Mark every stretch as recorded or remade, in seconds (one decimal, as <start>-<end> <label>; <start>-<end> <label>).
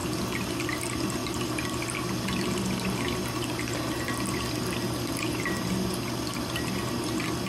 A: 0.0-7.5 recorded